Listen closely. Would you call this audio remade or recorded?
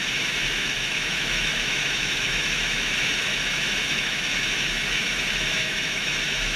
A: remade